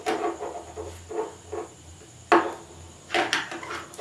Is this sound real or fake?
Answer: real